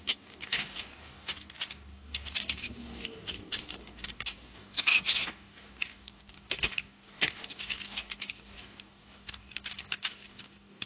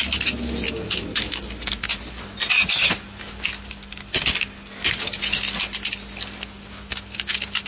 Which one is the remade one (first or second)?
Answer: first